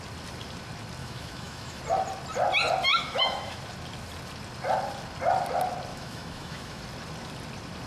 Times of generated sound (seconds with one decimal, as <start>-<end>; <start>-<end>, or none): 1.0-1.8; 2.9-3.6; 5.9-6.8